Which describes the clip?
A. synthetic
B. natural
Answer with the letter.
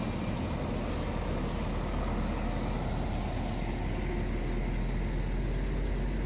B